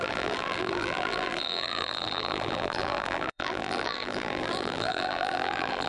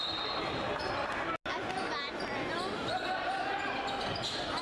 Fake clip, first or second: first